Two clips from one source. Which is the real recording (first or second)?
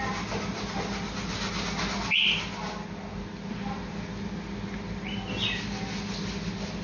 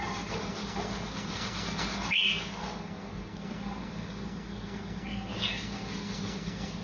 first